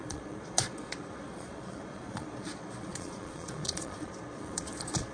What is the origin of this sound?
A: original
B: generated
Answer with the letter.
B